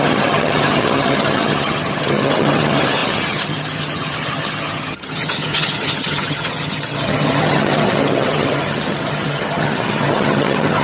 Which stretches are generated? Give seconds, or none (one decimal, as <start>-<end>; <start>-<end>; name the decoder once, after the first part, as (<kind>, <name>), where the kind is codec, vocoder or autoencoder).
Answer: 0.0-10.8 (vocoder, HiFi-GAN)